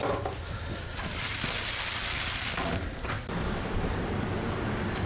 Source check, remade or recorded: remade